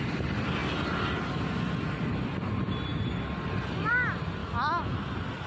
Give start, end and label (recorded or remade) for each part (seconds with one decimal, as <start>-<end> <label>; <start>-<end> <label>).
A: 0.0-4.4 recorded; 4.4-5.0 remade; 5.0-5.5 recorded